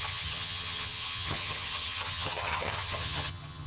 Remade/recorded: remade